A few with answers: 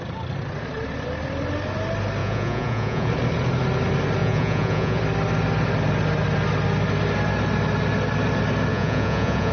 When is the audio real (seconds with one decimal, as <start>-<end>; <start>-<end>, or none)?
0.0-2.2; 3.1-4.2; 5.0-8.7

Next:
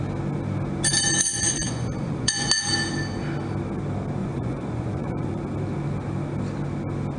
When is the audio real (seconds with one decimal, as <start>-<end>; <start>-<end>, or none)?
0.0-1.3; 2.5-4.2; 5.4-7.2

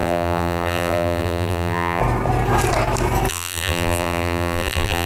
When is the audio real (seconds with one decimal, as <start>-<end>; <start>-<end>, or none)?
2.0-3.3

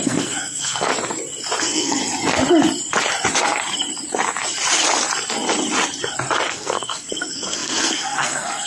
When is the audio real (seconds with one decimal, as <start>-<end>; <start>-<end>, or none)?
0.9-1.6; 2.0-6.5

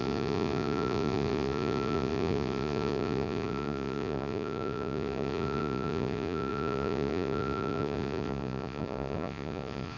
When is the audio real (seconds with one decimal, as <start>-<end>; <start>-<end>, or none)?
none

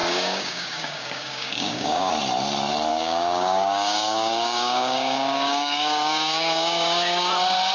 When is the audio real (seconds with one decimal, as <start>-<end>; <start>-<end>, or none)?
2.1-2.9; 7.3-7.7

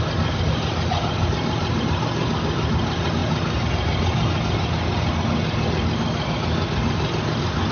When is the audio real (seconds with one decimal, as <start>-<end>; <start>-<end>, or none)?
0.0-7.7

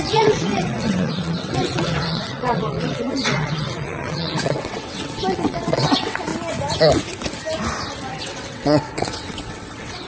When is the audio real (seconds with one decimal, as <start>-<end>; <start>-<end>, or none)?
6.3-8.0